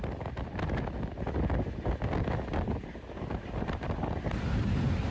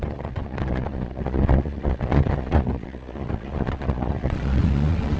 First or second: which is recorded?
first